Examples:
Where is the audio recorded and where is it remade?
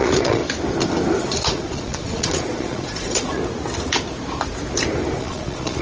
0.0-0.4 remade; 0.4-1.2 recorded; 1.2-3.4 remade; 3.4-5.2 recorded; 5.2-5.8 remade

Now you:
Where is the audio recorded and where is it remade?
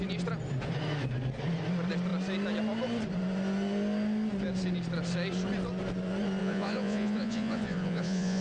0.0-6.4 recorded; 6.4-8.4 remade